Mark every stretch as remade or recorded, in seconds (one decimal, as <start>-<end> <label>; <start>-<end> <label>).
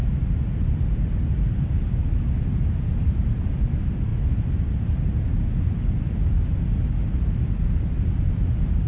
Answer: 0.0-0.6 recorded; 0.6-4.1 remade; 4.1-5.6 recorded; 5.6-8.9 remade